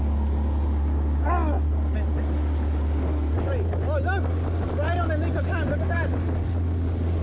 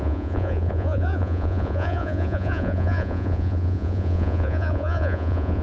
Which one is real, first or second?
first